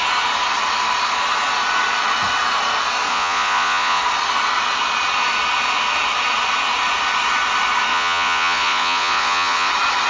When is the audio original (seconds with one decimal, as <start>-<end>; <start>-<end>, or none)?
0.0-3.1; 4.0-7.9; 9.7-10.1